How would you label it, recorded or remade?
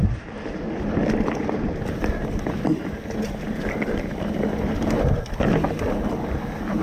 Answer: recorded